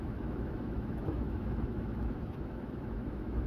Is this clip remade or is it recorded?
remade